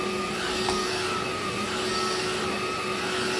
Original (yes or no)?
yes